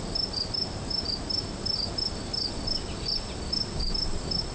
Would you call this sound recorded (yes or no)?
yes